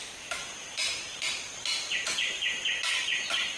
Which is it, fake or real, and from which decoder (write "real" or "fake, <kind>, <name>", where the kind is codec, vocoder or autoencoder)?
fake, vocoder, BigVGAN v2